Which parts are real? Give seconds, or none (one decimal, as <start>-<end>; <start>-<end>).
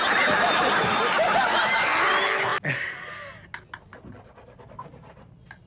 0.0-5.7